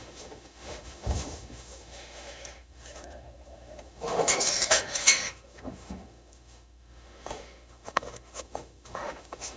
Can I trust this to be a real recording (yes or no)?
no